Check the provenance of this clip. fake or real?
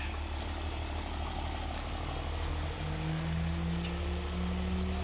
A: real